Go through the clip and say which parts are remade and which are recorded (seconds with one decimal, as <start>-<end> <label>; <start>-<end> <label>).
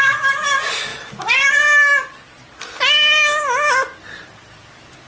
0.0-5.1 recorded